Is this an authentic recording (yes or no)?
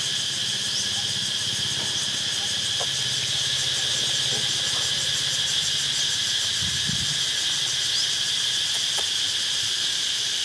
yes